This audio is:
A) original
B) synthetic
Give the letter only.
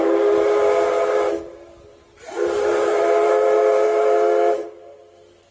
A